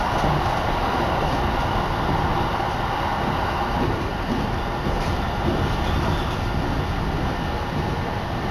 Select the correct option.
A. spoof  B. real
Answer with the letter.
B